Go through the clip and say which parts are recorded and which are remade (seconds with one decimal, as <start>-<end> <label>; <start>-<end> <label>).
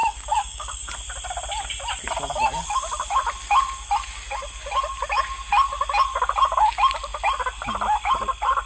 0.0-0.9 remade; 0.9-8.7 recorded